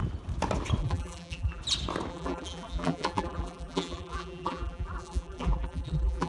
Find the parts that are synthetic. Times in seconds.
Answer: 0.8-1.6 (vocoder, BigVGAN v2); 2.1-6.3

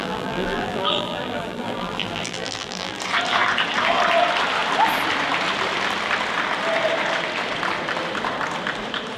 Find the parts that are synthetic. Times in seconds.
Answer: 0.0-3.0 (vocoder, BigVGAN v2)